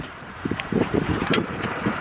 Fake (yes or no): yes